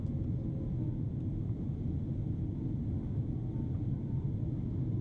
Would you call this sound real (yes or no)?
yes